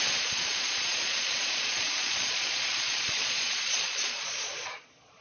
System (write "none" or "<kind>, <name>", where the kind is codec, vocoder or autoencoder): vocoder, Vocos